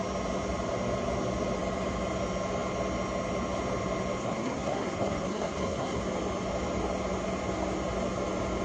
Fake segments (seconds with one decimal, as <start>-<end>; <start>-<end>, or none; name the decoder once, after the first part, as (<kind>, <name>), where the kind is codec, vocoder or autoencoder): 4.2-6.0 (codec, SNAC)